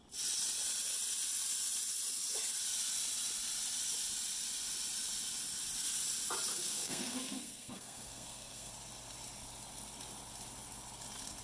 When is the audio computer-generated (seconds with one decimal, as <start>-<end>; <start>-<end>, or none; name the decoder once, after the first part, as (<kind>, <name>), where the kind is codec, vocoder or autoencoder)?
6.5-8.7 (codec, SNAC)